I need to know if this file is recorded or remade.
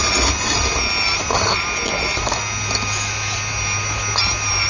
recorded